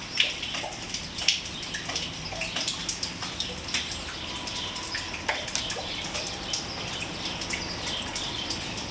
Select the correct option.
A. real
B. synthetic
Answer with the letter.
A